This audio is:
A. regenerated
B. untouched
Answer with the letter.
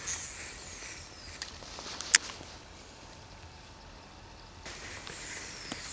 B